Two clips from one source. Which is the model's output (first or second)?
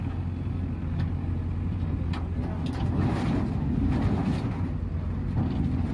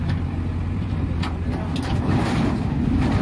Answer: second